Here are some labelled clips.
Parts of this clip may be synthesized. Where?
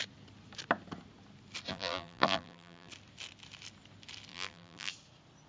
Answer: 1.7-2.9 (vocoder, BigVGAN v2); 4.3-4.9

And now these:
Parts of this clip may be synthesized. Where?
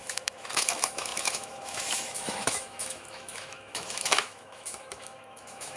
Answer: 0.0-5.8 (autoencoder, DAC-VAE)